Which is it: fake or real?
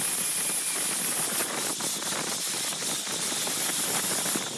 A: real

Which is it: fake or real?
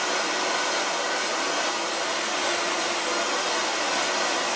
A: real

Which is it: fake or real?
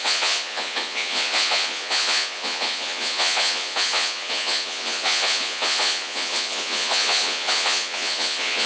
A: fake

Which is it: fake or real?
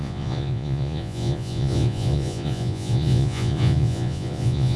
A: fake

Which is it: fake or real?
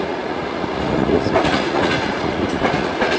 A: fake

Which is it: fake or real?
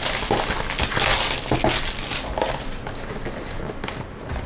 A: real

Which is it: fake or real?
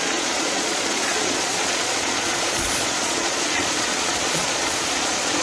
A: fake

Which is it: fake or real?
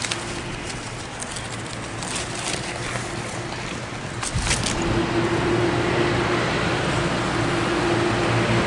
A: real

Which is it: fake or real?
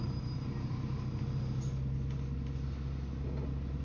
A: real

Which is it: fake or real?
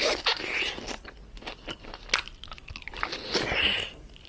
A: real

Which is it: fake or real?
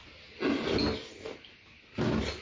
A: real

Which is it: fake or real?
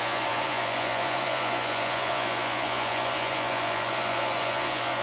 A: fake